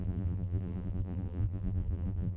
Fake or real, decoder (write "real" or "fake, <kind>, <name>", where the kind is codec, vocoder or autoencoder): fake, vocoder, BigVGAN v2